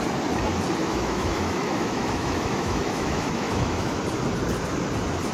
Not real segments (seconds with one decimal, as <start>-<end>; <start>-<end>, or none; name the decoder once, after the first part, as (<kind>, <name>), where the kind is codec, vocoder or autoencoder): 0.8-4.0 (autoencoder, DAC-VAE)